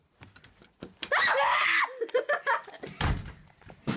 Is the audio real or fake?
real